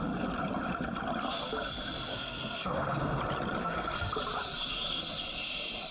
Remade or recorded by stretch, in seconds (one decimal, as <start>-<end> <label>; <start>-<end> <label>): 0.0-2.1 recorded; 2.1-3.2 remade; 3.2-3.6 recorded; 3.6-4.2 remade; 4.2-5.9 recorded